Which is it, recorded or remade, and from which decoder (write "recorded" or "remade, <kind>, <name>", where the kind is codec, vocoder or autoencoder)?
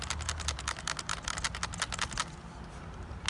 recorded